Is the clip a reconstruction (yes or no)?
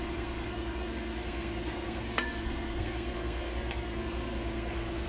yes